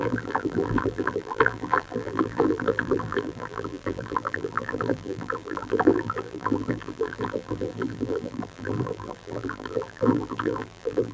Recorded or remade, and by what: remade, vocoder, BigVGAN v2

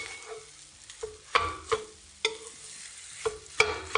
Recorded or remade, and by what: recorded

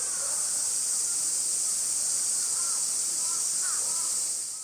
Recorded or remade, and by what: recorded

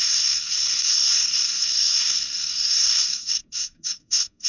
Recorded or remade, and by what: remade, codec, SNAC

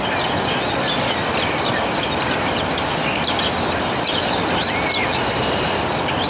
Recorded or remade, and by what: recorded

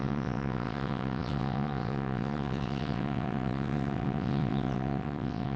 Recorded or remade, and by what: remade, vocoder, WaveNeXt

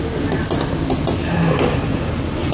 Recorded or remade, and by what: recorded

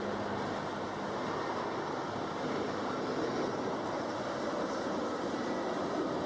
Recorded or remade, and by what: recorded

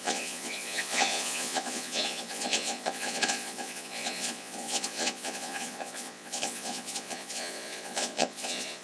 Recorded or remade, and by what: remade, vocoder, Vocos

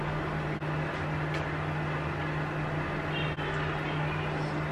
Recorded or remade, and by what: recorded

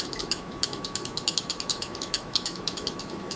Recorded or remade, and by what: remade, autoencoder, DAC-VAE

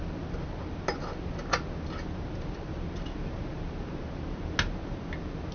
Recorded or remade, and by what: recorded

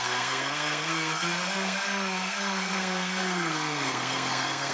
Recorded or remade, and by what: remade, codec, SNAC